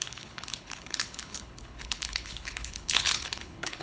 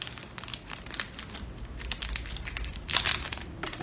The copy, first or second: first